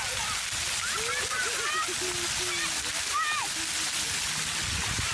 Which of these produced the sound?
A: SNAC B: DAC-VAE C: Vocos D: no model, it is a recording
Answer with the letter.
D